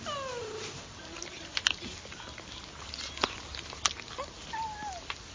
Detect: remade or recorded recorded